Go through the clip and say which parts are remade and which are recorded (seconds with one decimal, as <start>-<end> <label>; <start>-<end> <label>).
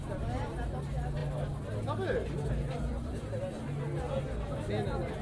0.0-5.2 recorded